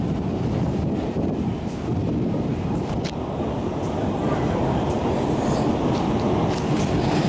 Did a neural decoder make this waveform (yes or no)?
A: no